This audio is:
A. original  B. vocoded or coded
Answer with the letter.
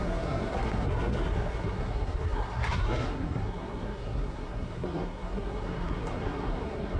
B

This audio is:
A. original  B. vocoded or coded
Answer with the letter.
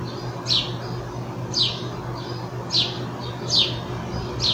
A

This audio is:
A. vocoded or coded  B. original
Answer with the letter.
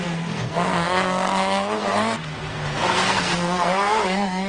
A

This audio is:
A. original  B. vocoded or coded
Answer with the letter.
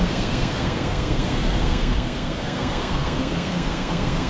B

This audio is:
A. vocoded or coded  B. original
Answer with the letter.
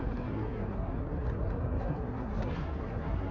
A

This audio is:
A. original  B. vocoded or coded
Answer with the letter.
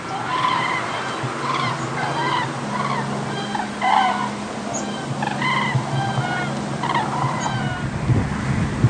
A